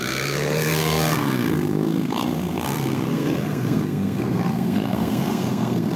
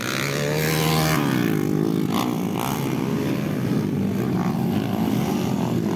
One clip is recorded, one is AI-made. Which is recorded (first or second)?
second